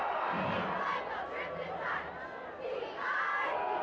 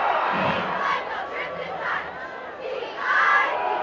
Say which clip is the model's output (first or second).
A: second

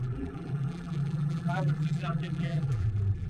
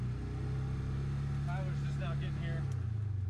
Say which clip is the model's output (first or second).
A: first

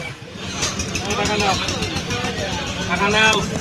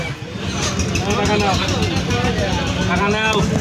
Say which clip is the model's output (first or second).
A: first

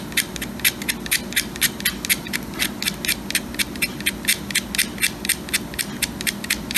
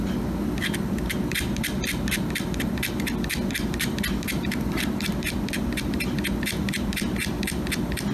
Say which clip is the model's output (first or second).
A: second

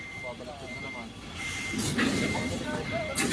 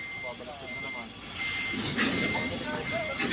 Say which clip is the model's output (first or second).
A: first